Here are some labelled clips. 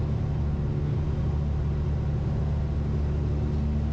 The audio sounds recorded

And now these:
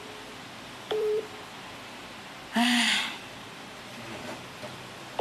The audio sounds remade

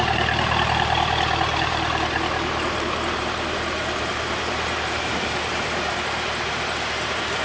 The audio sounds remade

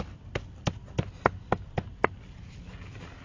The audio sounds recorded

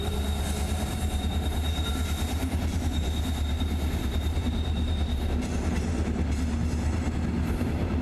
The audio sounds remade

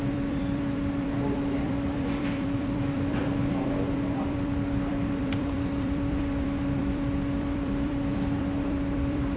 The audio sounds remade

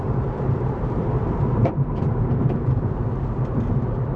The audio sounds remade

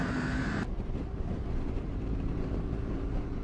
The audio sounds remade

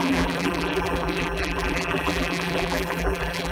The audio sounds remade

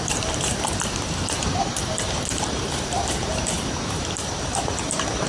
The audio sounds remade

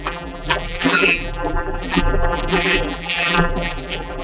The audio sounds remade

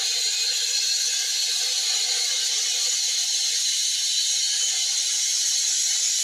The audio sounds recorded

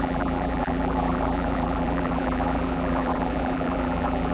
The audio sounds remade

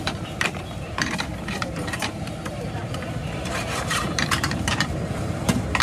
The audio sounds remade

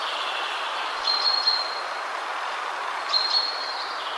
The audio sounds remade